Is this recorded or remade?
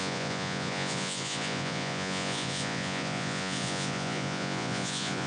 remade